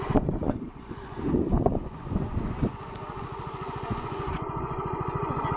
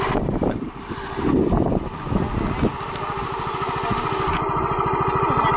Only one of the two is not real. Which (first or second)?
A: first